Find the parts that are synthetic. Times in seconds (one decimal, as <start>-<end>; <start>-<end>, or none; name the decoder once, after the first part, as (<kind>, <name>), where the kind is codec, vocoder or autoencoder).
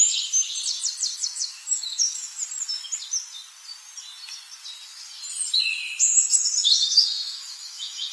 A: 1.1-2.4 (autoencoder, DAC-VAE); 6.1-8.1